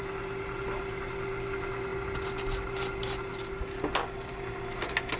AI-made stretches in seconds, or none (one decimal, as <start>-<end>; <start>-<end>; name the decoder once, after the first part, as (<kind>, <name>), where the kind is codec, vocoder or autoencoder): none